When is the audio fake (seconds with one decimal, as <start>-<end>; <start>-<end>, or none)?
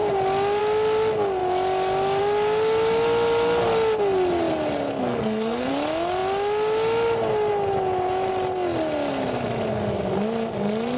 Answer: 5.0-5.7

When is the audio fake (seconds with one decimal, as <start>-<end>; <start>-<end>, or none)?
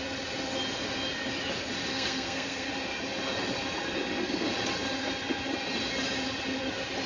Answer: 1.9-2.7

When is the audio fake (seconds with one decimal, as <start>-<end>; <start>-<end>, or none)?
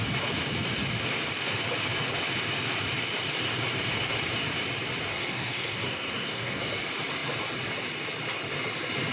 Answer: 5.1-6.6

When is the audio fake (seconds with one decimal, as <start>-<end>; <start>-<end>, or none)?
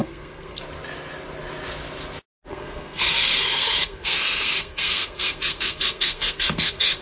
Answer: 0.0-0.6; 2.5-7.0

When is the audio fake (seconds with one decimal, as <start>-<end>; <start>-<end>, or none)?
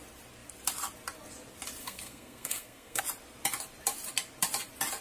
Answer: 1.8-3.0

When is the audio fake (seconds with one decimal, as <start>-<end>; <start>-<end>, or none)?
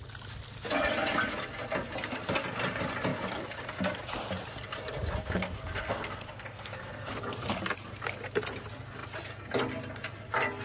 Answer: 5.2-7.1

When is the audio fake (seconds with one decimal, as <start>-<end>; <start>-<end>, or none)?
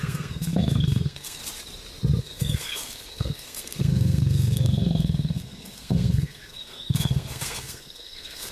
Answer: 0.0-1.4; 2.2-8.5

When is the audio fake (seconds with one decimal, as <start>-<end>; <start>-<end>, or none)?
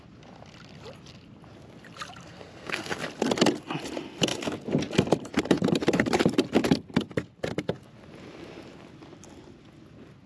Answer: 2.2-3.0